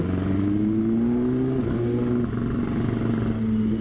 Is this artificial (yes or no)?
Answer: no